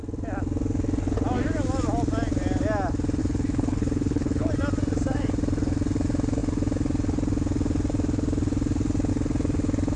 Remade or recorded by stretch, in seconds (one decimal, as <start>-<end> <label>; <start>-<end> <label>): 0.0-3.2 recorded; 3.2-4.5 remade; 4.5-10.0 recorded